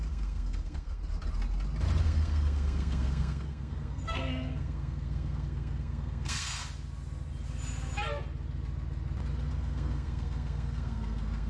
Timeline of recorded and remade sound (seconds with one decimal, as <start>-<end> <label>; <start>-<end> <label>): 0.0-1.0 remade; 1.0-2.0 recorded; 2.0-6.6 remade; 6.6-9.5 recorded; 9.5-11.5 remade